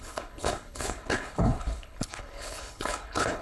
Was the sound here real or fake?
fake